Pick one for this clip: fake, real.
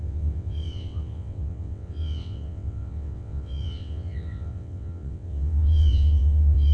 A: fake